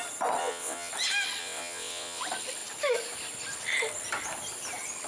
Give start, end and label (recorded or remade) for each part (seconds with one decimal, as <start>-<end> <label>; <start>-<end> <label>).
0.0-0.4 recorded; 0.4-0.9 remade; 0.9-1.4 recorded; 1.4-2.2 remade; 2.2-5.1 recorded

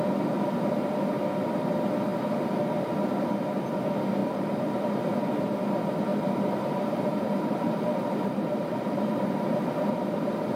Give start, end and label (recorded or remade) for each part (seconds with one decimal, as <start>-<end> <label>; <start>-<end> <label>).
0.0-4.2 recorded; 4.2-5.0 remade; 5.0-6.1 recorded; 6.1-9.8 remade; 9.8-10.6 recorded

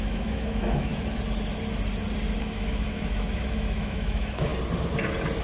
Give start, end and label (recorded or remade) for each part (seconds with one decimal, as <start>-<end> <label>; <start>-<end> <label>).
0.0-0.9 remade; 0.9-2.4 recorded; 2.4-4.5 remade; 4.5-5.4 recorded

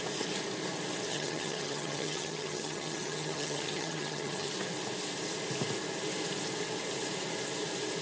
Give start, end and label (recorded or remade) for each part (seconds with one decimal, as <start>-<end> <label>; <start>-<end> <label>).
0.0-1.1 recorded; 1.1-4.5 remade; 4.5-8.0 recorded

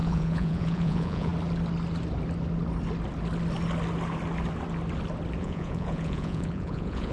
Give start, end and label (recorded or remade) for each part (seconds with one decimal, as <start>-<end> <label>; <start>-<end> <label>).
0.0-1.3 remade; 1.3-5.4 recorded; 5.4-7.1 remade

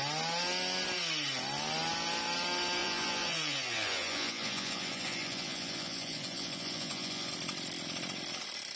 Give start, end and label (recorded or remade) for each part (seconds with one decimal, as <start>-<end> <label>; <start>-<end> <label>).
0.0-2.8 recorded; 2.8-7.3 remade; 7.3-8.8 recorded